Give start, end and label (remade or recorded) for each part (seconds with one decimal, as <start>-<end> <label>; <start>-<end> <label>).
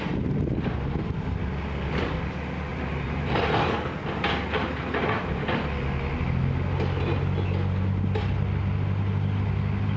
0.0-2.7 recorded; 2.7-3.6 remade; 3.6-10.0 recorded